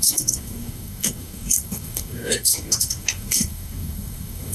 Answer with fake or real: fake